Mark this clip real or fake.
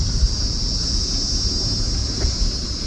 real